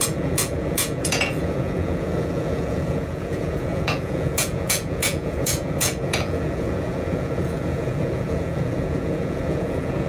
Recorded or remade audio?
remade